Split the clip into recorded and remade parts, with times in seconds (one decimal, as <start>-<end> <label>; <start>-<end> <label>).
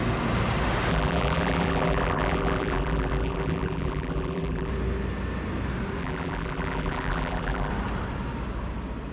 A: 0.0-0.9 recorded; 0.9-4.7 remade; 4.7-6.0 recorded; 6.0-7.7 remade; 7.7-9.1 recorded